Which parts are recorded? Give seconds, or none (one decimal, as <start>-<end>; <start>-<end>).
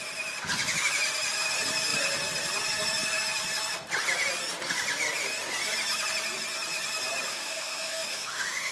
0.0-7.3